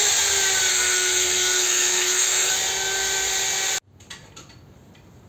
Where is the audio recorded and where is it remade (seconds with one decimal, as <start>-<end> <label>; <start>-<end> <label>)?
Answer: 0.0-0.7 recorded; 0.7-2.5 remade; 2.5-5.3 recorded